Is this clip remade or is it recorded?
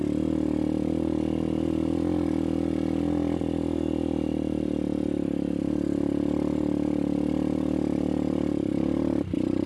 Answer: recorded